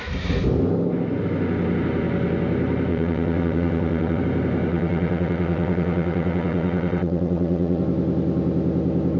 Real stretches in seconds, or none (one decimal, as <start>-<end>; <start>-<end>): 0.0-2.9; 4.2-4.7; 7.8-9.2